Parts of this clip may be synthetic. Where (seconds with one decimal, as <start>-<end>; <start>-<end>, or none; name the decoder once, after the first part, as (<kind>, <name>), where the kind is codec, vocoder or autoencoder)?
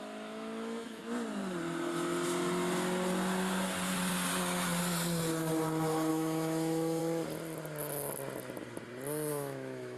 0.0-1.0 (autoencoder, DAC-VAE); 6.1-7.0; 9.3-10.0